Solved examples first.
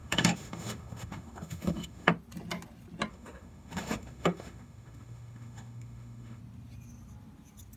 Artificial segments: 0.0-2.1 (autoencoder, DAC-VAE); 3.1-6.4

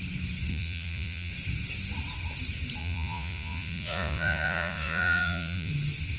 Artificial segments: 0.5-1.3 (vocoder, Vocos); 2.8-5.7

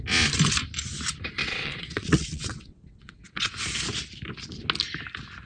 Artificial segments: 1.4-3.5 (vocoder, WaveNeXt)

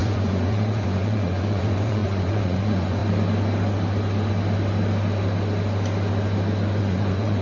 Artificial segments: 0.0-3.0 (vocoder, Vocos); 6.8-7.4

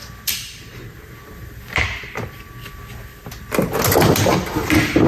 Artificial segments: none